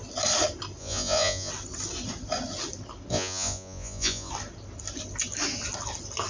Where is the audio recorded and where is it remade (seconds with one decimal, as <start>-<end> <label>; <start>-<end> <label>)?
0.0-0.8 recorded; 0.8-1.5 remade; 1.5-3.1 recorded; 3.1-4.3 remade; 4.3-6.3 recorded